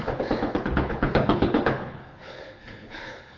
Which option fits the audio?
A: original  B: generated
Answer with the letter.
B